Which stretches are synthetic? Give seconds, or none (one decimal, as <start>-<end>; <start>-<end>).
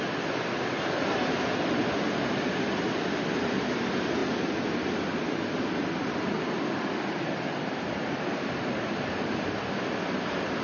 none